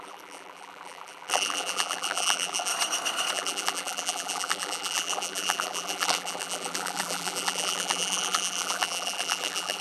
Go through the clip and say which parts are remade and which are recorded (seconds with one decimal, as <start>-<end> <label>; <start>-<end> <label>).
0.0-2.7 remade; 2.7-3.3 recorded; 3.3-9.8 remade